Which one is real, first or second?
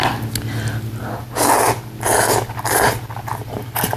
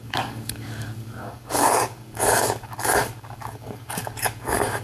first